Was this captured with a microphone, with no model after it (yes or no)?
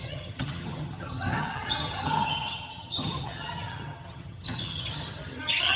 no